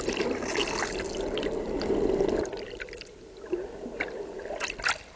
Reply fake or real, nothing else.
real